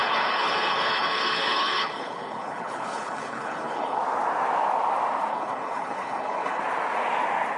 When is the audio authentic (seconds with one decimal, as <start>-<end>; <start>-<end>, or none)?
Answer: 4.0-5.3; 6.6-7.6